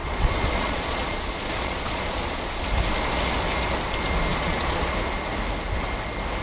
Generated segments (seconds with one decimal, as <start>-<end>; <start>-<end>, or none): 0.0-2.6; 4.3-4.9